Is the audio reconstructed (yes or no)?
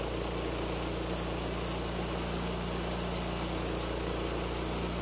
no